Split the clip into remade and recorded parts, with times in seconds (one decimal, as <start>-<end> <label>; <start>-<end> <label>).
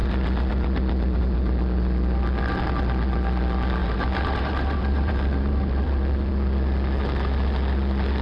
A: 0.0-3.8 recorded; 3.8-6.3 remade; 6.3-8.2 recorded